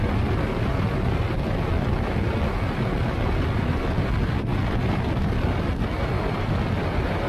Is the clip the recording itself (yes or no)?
yes